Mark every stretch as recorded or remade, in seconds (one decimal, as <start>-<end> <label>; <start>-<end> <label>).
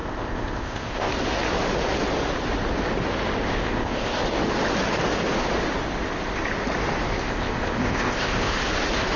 0.0-1.1 remade; 1.1-3.5 recorded; 3.5-4.2 remade; 4.2-7.2 recorded; 7.2-8.5 remade; 8.5-9.2 recorded